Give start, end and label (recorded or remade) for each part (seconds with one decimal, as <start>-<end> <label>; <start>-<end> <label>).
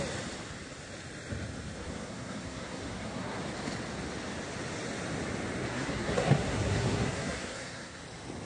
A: 0.0-1.8 recorded; 1.8-3.4 remade; 3.4-5.7 recorded; 5.7-8.0 remade; 8.0-8.4 recorded